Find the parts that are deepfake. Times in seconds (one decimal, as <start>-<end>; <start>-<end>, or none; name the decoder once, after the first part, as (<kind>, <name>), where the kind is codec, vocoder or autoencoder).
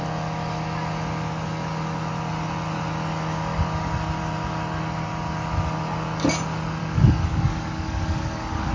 6.8-8.7 (codec, DAC)